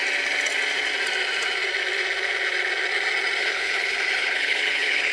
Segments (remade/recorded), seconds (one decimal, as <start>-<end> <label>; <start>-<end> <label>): 0.0-3.4 recorded; 3.4-5.1 remade

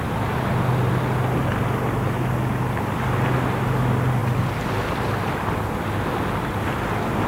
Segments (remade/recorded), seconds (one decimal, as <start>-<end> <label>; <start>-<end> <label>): 0.0-4.2 recorded; 4.2-4.7 remade; 4.7-7.3 recorded

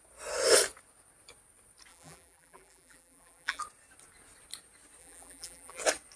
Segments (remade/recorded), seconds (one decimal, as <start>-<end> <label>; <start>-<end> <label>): 0.0-1.9 recorded; 1.9-3.6 remade; 3.6-5.0 recorded; 5.0-5.8 remade; 5.8-6.2 recorded

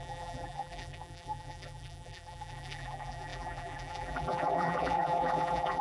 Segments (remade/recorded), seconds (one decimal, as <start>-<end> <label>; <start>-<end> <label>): 0.0-5.8 remade

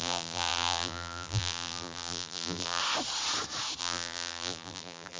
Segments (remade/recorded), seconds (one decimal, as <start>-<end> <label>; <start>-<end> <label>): 0.0-2.8 remade; 2.8-3.8 recorded; 3.8-5.2 remade

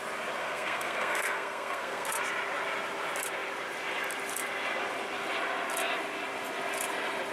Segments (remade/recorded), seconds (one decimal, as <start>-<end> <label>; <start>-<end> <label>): 0.0-0.4 recorded; 0.4-2.2 remade; 2.2-7.3 recorded

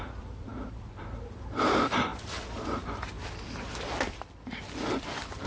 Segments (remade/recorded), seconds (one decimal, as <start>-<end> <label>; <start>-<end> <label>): 0.0-0.5 remade; 0.5-1.4 recorded; 1.4-2.1 remade; 2.1-5.5 recorded

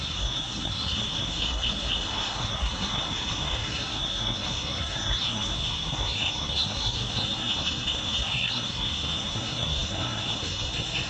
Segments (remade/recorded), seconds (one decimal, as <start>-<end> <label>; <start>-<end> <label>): 0.0-11.1 remade